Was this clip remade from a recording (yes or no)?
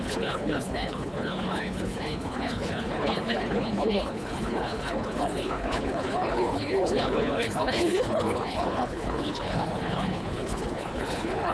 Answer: yes